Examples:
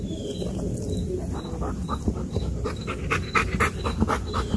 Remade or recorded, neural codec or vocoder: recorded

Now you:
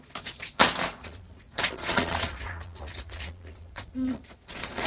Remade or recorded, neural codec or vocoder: remade, vocoder, Vocos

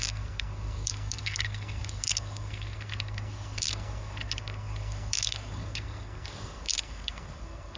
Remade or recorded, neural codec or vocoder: remade, codec, SNAC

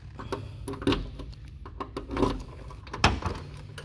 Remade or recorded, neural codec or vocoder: recorded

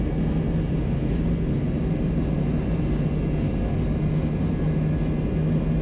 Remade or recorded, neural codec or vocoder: recorded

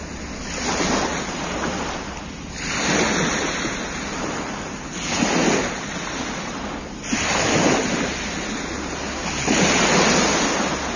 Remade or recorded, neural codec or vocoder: recorded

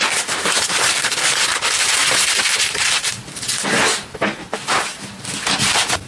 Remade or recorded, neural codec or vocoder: recorded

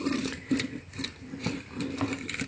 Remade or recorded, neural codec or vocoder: remade, vocoder, BigVGAN v2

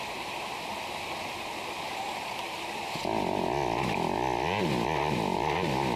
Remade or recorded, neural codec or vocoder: recorded